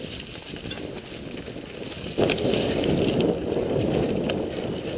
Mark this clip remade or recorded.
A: recorded